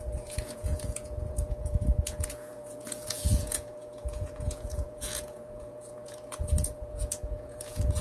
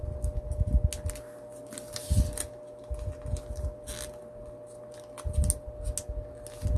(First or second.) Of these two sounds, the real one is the second